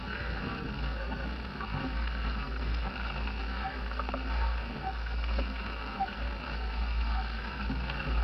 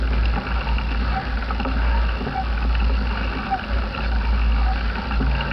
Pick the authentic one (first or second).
second